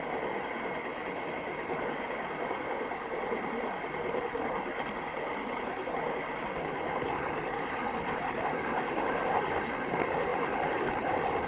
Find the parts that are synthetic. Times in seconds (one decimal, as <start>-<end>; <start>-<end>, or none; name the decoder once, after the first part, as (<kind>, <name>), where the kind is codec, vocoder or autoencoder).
none